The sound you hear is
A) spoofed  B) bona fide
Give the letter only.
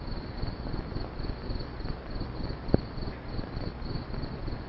B